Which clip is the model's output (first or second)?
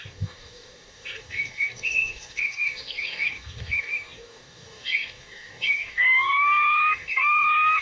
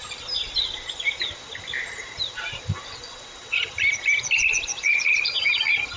first